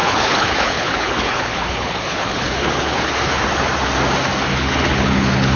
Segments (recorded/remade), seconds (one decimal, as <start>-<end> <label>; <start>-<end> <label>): 0.0-3.4 remade; 3.4-4.5 recorded; 4.5-5.6 remade